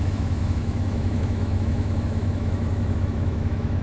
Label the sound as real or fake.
fake